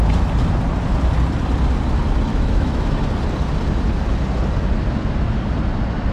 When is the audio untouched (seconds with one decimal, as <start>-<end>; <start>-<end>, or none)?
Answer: 0.0-2.3; 2.9-6.1